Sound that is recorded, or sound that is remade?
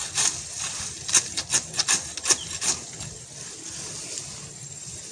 recorded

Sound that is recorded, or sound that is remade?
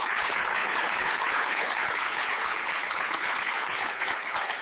remade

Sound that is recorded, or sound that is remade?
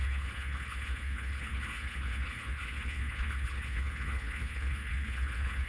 remade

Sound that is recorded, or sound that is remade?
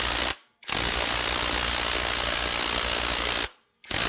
recorded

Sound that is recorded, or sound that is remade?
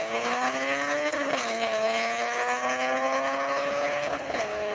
remade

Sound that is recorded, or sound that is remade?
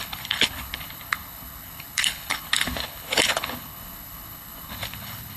remade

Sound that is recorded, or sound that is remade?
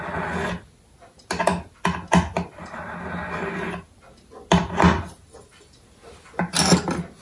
recorded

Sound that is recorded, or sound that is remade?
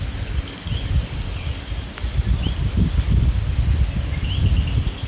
recorded